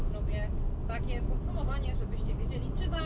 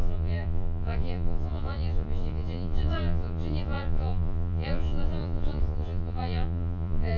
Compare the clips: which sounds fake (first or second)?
second